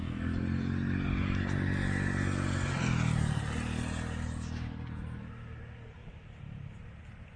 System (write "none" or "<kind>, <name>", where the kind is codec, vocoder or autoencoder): none